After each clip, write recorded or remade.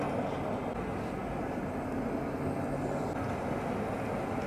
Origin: recorded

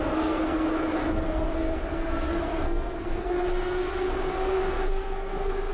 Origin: remade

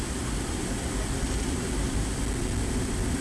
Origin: recorded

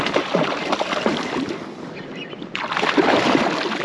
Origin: recorded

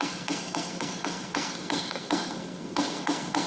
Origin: remade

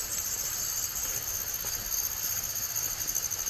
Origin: recorded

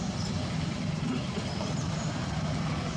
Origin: recorded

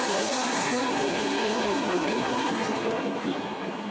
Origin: remade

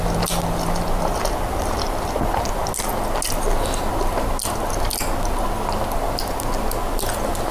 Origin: recorded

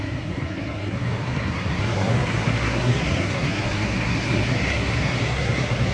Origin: remade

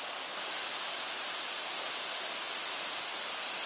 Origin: recorded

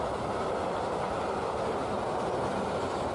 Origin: recorded